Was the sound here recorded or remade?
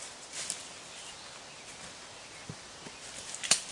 recorded